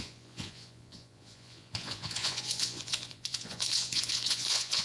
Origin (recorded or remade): remade